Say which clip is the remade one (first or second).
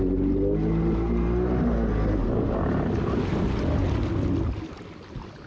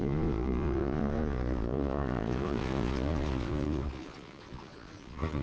second